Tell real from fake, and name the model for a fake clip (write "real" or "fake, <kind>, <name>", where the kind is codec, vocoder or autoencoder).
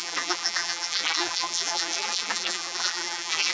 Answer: fake, vocoder, BigVGAN v2